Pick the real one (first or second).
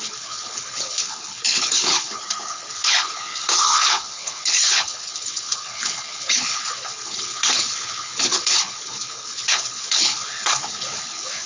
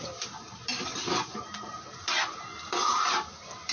second